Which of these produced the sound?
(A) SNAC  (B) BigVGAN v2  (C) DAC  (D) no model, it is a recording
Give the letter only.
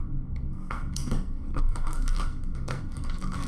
A